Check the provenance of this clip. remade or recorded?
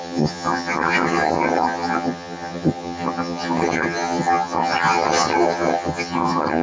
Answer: remade